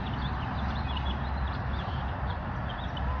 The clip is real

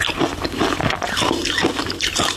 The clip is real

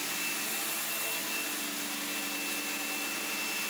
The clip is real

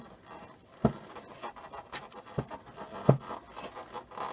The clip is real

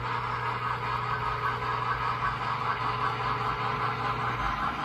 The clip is real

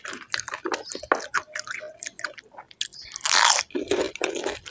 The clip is real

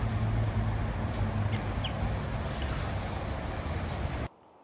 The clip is real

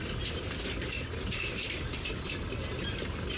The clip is real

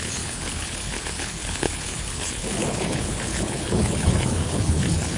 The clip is fake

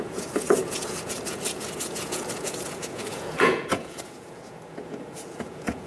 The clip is fake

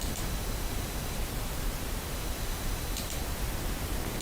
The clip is fake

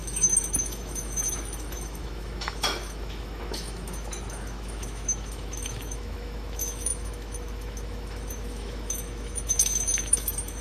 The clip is fake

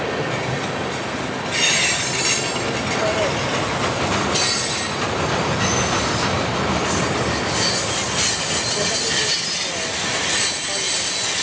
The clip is real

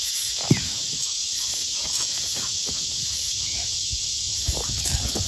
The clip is fake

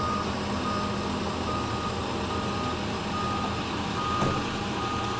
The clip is real